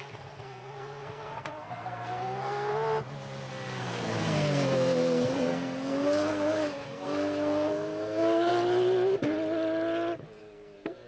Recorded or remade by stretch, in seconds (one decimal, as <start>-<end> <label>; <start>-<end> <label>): 0.0-2.7 remade; 2.7-3.5 recorded; 3.5-8.5 remade; 8.5-10.4 recorded; 10.4-11.1 remade